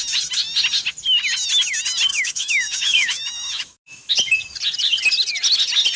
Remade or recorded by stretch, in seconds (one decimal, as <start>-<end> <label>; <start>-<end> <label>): 0.0-2.1 recorded; 2.1-4.1 remade; 4.1-6.0 recorded